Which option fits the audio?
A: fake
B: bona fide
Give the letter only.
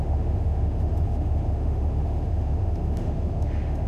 A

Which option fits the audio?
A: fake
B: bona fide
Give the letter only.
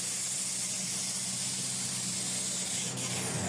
B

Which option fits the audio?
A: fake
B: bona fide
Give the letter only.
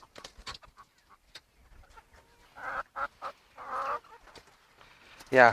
B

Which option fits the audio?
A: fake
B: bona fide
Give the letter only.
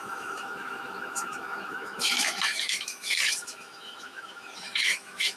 A